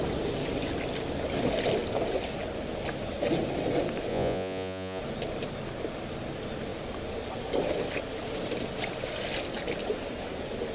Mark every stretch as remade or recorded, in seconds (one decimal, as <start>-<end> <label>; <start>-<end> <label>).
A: 0.0-4.1 recorded; 4.1-5.0 remade; 5.0-10.7 recorded